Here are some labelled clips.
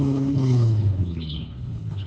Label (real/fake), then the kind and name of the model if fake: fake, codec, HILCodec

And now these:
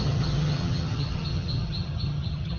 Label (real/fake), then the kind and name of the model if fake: fake, vocoder, HiFi-GAN